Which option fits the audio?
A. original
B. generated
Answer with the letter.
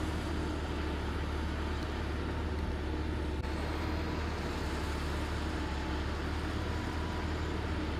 A